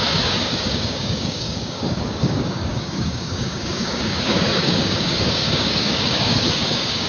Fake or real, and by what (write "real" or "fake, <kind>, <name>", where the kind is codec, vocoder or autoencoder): fake, codec, DAC